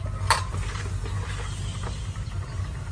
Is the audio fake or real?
real